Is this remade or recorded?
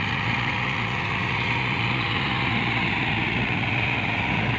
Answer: remade